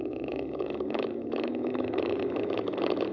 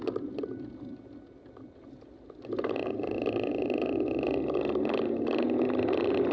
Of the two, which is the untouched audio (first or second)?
second